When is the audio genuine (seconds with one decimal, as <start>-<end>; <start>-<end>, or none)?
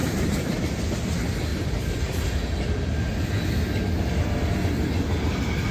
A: 0.8-1.5; 3.3-5.7